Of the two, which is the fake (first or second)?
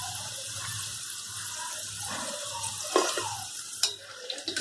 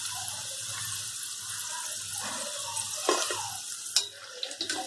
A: first